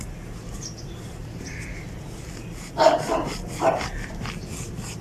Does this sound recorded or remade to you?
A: recorded